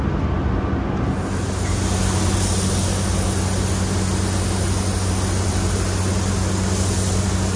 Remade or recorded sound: recorded